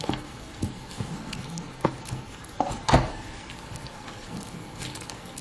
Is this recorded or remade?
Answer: remade